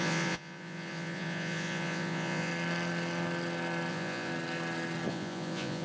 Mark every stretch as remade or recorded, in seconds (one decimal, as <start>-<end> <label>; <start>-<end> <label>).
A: 0.0-2.5 remade; 2.5-3.9 recorded; 3.9-4.3 remade; 4.3-5.1 recorded; 5.1-5.8 remade